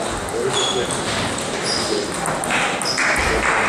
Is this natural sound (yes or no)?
yes